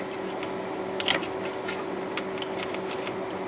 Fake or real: real